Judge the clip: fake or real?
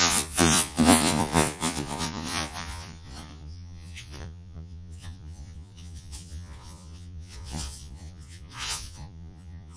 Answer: fake